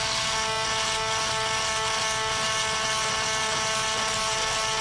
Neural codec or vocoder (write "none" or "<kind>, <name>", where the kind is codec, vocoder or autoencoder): none